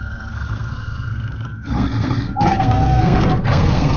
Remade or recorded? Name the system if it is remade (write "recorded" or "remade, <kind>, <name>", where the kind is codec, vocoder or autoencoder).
remade, codec, SNAC